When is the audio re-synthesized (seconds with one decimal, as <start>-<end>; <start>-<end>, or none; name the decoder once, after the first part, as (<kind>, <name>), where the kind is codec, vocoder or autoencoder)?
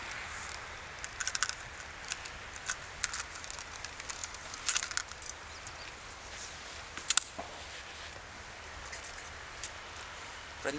none